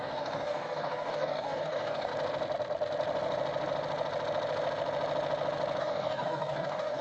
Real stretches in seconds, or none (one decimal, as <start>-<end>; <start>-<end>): 2.1-5.8